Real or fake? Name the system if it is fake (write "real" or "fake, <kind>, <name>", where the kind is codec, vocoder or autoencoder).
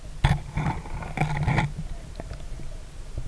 real